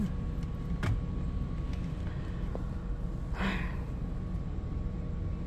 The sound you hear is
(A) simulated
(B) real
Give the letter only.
B